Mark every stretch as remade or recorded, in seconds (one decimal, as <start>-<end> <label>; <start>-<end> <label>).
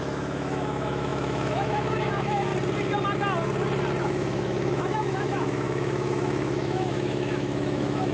0.0-2.5 remade; 2.5-4.0 recorded; 4.0-8.1 remade